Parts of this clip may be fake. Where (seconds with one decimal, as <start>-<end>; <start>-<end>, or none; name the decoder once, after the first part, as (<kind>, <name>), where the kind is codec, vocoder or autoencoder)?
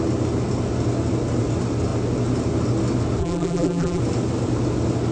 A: 3.2-4.0 (vocoder, BigVGAN v2)